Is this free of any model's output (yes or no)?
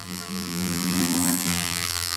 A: no